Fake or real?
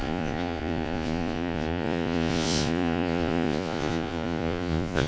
fake